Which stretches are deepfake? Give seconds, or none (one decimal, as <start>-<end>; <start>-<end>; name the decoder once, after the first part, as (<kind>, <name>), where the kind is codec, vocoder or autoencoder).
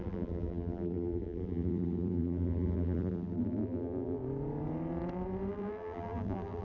0.0-4.2 (vocoder, BigVGAN v2); 5.5-6.6